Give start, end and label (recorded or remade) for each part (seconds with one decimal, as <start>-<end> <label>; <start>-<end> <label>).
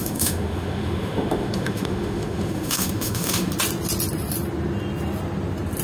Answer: 0.0-3.5 remade; 3.5-5.8 recorded